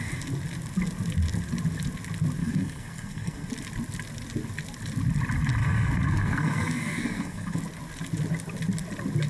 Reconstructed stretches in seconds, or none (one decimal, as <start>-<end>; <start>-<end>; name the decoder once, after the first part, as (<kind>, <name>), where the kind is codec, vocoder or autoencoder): 2.4-3.5 (codec, SNAC); 5.6-7.6